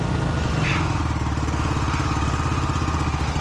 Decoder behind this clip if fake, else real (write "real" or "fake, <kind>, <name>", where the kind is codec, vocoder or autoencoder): real